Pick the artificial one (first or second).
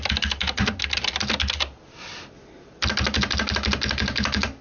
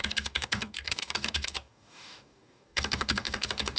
second